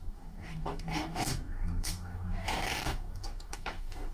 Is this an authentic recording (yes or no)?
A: no